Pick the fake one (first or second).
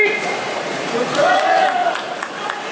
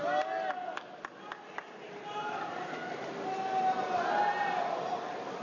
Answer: first